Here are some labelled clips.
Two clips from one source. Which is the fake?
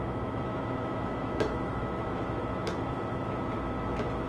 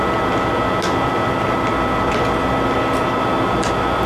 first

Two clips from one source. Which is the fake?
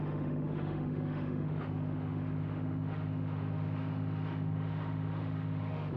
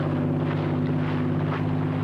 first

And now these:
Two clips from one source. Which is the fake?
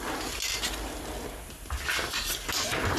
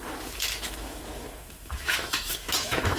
second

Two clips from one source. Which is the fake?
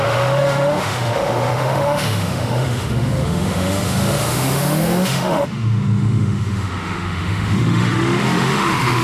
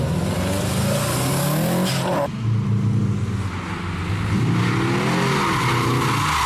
first